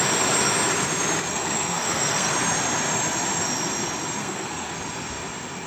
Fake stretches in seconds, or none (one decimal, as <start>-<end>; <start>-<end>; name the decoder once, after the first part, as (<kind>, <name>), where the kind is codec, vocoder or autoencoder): 1.3-2.3 (codec, SNAC); 4.2-4.7